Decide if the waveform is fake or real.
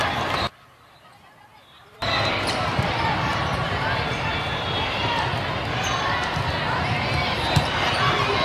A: real